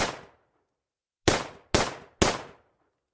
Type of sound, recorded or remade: recorded